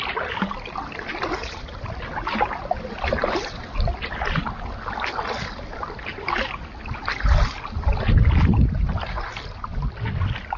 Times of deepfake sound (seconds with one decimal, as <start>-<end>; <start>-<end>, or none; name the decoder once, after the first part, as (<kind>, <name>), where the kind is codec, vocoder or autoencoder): none